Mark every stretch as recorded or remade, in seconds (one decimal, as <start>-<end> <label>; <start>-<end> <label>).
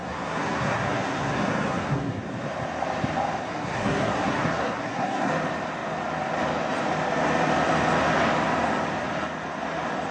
0.0-2.2 remade; 2.2-3.4 recorded; 3.4-5.3 remade; 5.3-10.1 recorded